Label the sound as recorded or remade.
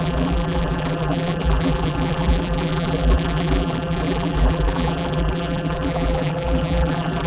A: remade